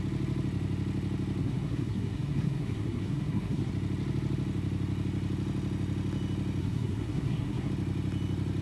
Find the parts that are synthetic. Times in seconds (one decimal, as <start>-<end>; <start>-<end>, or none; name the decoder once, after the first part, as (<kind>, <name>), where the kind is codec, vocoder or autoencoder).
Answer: 1.4-3.7 (codec, SNAC); 6.6-7.7